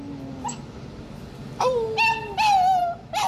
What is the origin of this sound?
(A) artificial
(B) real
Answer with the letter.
B